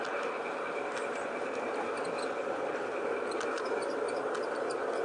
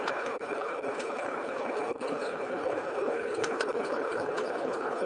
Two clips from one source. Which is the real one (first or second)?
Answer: first